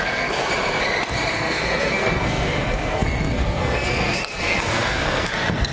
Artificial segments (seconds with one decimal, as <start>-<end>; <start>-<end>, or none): 0.0-0.4; 1.3-5.7